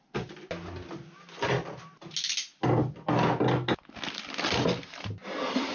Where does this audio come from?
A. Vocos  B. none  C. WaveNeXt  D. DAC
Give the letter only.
B